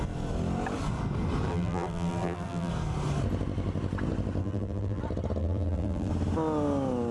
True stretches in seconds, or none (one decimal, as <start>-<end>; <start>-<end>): 0.0-1.5; 2.7-4.4; 5.0-5.4; 6.1-7.1